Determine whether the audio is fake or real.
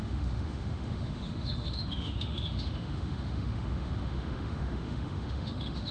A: fake